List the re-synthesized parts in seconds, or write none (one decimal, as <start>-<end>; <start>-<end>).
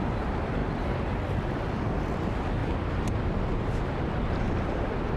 none